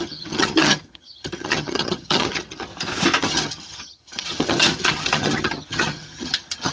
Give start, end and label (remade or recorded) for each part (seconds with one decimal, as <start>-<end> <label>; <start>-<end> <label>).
0.0-2.7 remade; 2.7-3.2 recorded; 3.2-6.7 remade

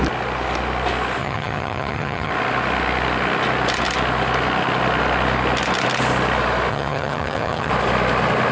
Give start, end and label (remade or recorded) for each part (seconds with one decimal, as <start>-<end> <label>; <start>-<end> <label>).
0.0-1.2 recorded; 1.2-2.3 remade; 2.3-6.7 recorded; 6.7-7.7 remade; 7.7-8.5 recorded